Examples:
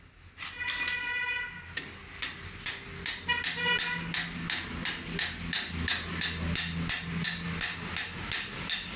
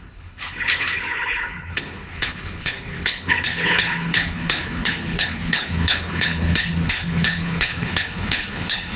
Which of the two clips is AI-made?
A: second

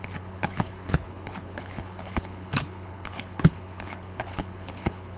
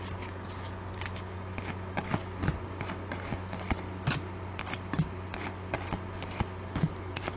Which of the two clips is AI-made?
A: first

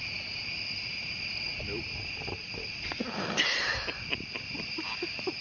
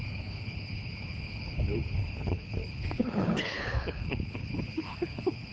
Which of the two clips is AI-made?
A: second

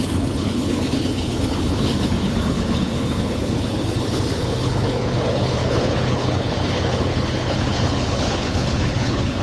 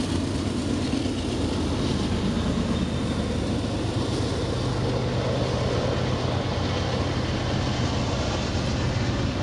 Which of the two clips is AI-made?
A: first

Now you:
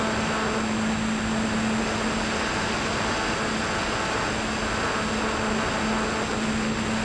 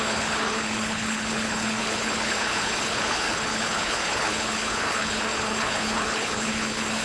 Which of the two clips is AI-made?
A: second